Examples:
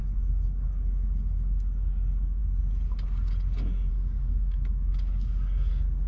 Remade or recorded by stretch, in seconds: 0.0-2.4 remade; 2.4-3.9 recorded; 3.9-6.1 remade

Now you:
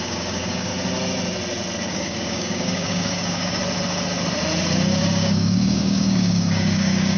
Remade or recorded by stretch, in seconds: 0.0-0.7 remade; 0.7-1.9 recorded; 1.9-3.6 remade; 3.6-5.0 recorded; 5.0-7.2 remade

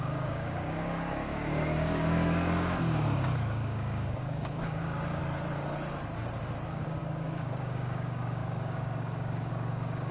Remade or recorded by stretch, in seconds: 0.0-5.2 remade; 5.2-6.7 recorded; 6.7-10.1 remade

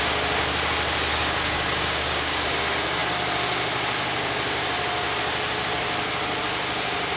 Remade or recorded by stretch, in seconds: 0.0-1.1 recorded; 1.1-2.4 remade; 2.4-7.2 recorded

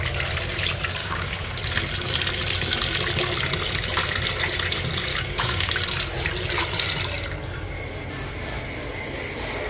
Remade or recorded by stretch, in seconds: 0.0-1.0 recorded; 1.0-1.6 remade; 1.6-5.1 recorded; 5.1-5.7 remade; 5.7-9.7 recorded

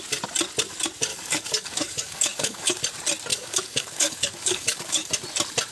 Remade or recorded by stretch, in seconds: 0.0-1.1 recorded; 1.1-2.8 remade; 2.8-3.3 recorded; 3.3-5.1 remade; 5.1-5.7 recorded

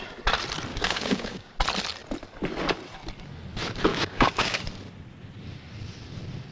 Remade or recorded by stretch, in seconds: 0.0-0.7 recorded; 0.7-1.5 remade; 1.5-3.9 recorded; 3.9-4.6 remade; 4.6-6.5 recorded

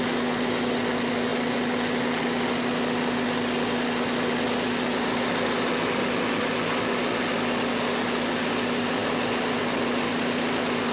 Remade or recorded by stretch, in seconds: 0.0-10.9 recorded